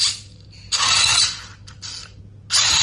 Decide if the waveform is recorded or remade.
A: recorded